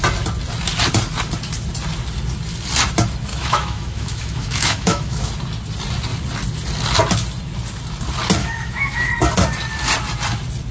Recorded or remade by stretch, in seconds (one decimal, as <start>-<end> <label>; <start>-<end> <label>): 0.0-3.3 recorded; 3.3-5.3 remade; 5.3-8.4 recorded; 8.4-9.1 remade; 9.1-10.7 recorded